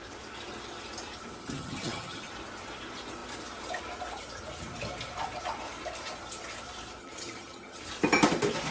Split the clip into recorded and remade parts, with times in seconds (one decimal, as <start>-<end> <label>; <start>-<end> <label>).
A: 0.0-1.4 recorded; 1.4-2.3 remade; 2.3-7.0 recorded; 7.0-7.8 remade; 7.8-8.7 recorded